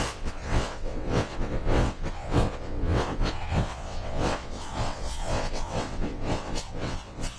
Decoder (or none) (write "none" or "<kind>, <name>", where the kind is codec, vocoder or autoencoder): vocoder, WaveNeXt